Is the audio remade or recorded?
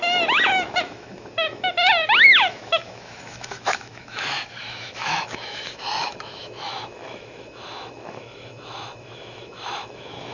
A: remade